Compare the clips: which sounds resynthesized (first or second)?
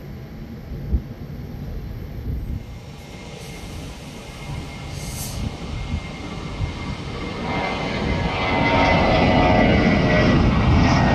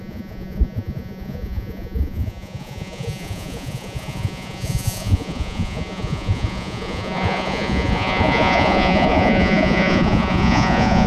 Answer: second